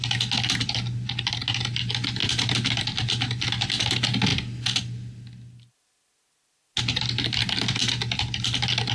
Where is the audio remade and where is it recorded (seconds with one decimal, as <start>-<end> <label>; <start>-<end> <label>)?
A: 0.0-8.9 recorded